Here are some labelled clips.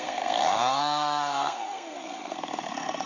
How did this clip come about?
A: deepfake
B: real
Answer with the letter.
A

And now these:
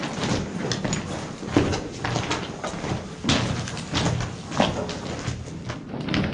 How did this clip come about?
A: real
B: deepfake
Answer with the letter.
A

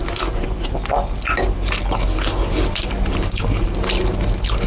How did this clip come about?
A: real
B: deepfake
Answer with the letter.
A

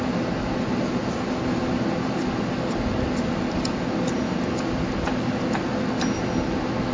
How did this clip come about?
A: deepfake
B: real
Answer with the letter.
B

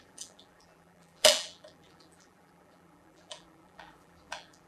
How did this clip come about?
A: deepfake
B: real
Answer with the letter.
A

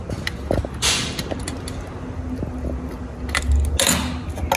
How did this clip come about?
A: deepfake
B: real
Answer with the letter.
B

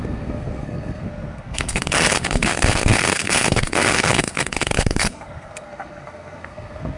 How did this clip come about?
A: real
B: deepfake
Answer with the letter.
B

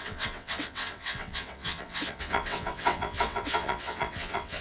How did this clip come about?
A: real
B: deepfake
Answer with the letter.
B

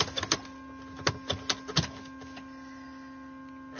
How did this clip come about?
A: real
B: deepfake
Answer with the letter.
A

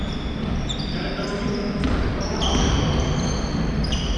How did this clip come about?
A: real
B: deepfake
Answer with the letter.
A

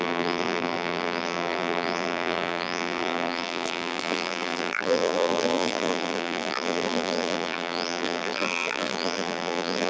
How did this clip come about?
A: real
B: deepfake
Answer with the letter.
B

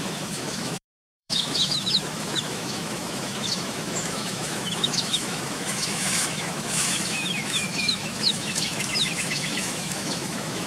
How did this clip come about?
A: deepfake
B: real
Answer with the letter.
A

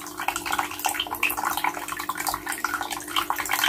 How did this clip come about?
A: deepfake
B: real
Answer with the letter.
B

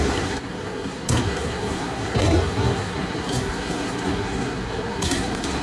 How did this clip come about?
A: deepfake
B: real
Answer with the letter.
A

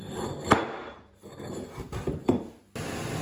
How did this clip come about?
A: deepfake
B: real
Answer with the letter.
B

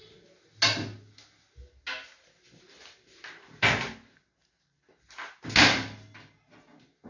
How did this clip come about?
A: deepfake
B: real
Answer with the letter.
B